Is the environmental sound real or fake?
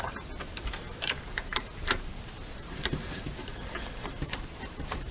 fake